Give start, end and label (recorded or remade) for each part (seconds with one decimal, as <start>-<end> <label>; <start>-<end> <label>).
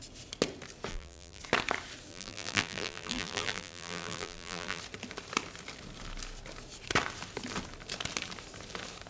0.0-0.9 recorded; 0.9-1.4 remade; 1.4-2.1 recorded; 2.1-4.8 remade; 4.8-9.1 recorded